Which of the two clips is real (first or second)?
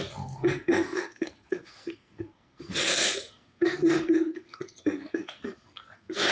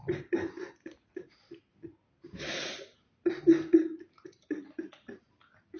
second